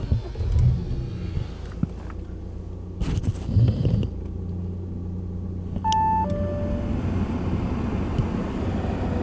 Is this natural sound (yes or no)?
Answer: yes